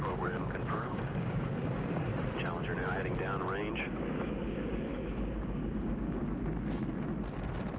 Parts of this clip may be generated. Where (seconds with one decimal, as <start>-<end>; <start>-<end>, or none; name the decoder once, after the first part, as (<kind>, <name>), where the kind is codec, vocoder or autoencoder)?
0.0-2.1 (codec, DAC); 3.9-6.2